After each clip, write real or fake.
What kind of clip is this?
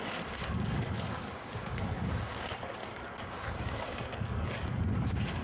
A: fake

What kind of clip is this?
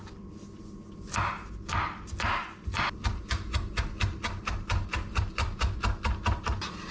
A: real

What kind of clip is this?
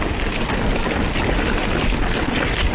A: real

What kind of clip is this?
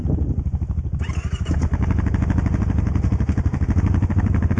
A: real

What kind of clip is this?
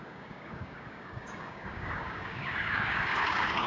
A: fake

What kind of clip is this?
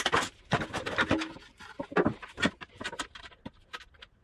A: real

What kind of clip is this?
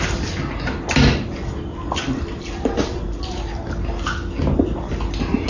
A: real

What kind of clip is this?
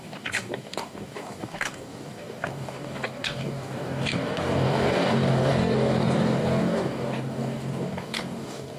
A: fake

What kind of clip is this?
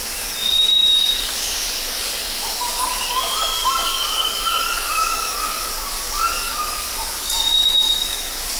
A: fake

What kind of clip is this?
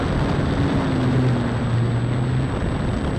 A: real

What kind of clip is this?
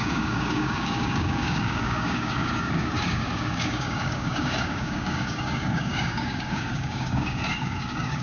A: fake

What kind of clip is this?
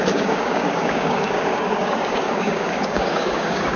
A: fake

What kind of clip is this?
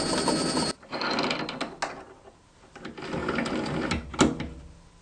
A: real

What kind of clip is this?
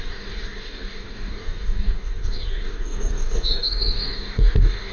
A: fake